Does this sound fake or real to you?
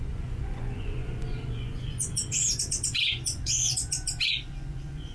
fake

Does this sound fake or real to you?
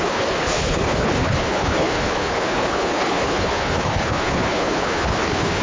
fake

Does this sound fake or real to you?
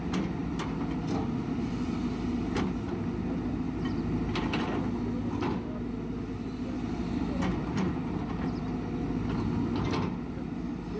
real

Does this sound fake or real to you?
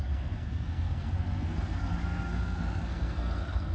fake